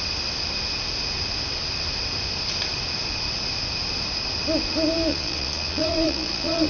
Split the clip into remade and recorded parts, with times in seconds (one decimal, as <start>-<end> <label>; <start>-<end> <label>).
0.0-5.1 recorded; 5.1-6.7 remade